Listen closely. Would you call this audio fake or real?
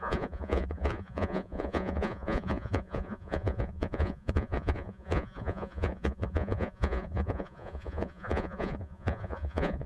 fake